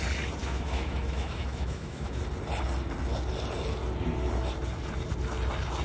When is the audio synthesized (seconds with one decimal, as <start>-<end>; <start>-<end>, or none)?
0.4-2.2